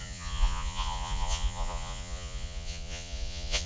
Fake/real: fake